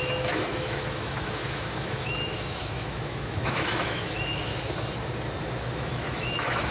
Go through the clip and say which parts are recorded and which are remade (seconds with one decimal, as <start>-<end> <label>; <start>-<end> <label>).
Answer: 0.0-4.5 remade; 4.5-5.4 recorded; 5.4-6.7 remade